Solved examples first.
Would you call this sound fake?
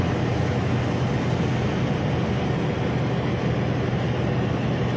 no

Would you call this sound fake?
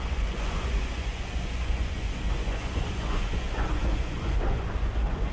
yes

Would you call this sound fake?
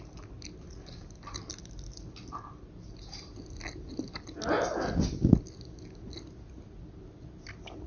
no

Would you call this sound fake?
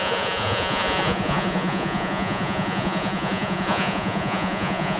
yes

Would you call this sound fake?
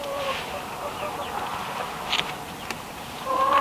no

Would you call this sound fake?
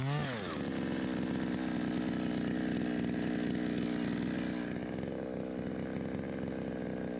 no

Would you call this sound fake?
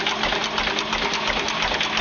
no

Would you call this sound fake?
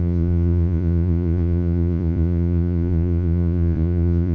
yes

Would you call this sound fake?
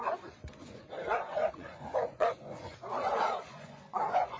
yes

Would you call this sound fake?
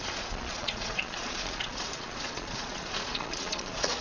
yes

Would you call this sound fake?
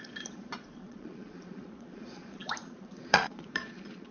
yes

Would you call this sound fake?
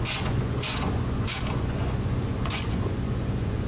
yes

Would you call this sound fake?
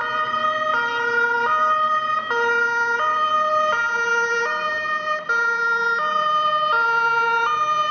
no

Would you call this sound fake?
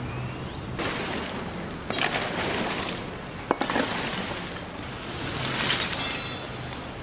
no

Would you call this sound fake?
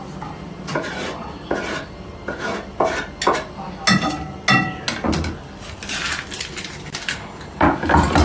no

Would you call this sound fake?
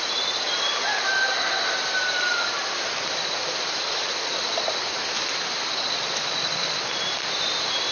no